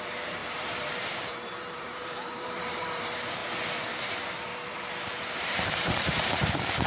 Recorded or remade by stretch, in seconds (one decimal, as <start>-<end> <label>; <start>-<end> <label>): 0.0-3.4 remade; 3.4-5.4 recorded; 5.4-6.9 remade